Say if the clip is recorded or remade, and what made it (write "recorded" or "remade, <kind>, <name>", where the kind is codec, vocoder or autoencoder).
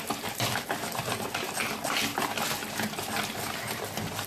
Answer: recorded